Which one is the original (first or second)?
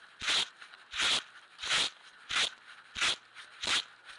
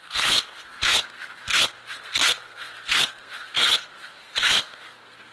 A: first